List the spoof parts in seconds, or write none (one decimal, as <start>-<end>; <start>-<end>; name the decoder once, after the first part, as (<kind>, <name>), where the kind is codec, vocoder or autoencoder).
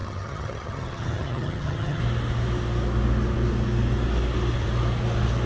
0.0-2.0 (vocoder, HiFi-GAN)